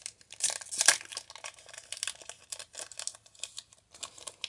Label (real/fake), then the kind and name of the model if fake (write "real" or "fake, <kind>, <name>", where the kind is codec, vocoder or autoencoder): real